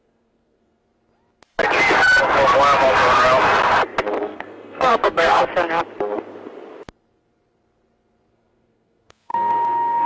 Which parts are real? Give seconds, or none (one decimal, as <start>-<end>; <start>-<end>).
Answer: 0.8-4.2; 5.5-8.3

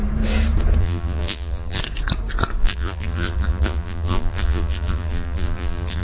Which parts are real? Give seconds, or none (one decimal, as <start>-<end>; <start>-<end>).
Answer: 0.0-0.8; 1.8-2.6

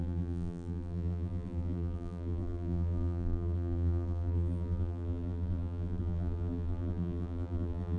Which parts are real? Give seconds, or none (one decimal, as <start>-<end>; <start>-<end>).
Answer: none

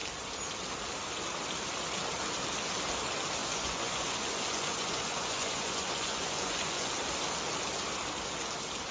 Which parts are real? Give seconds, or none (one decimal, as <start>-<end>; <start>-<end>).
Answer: 0.0-3.4; 6.9-8.9

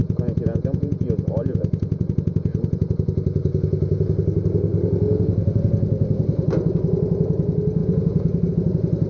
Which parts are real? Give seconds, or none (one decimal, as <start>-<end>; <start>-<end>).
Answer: 4.0-7.8; 8.5-9.1

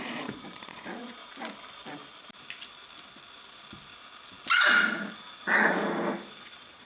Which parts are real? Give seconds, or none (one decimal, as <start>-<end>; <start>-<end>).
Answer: 1.2-5.1; 5.8-6.3

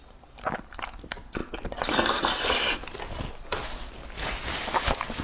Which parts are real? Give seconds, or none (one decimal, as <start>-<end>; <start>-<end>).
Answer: 0.0-5.2

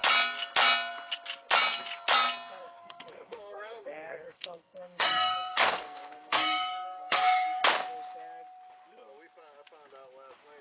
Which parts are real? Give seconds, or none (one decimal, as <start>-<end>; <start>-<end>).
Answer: 0.0-2.6; 7.6-10.6